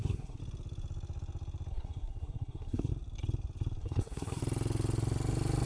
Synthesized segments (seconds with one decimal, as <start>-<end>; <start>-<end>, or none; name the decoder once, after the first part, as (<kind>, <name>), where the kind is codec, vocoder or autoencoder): 0.0-0.4 (codec, SNAC); 1.7-2.9; 3.8-4.4